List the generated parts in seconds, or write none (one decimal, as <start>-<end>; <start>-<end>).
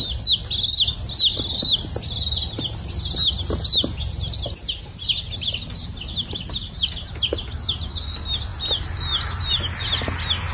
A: none